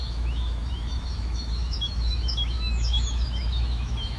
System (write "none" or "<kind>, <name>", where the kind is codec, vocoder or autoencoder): autoencoder, DAC-VAE